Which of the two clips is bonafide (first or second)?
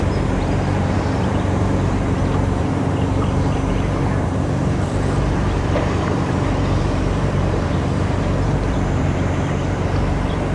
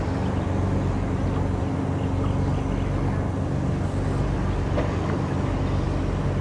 second